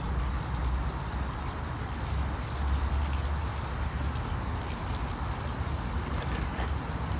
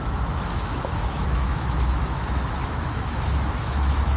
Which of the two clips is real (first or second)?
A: first